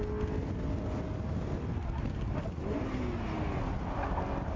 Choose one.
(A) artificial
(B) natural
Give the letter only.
B